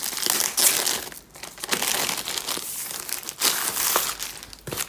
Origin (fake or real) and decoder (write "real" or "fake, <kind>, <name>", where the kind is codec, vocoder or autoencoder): real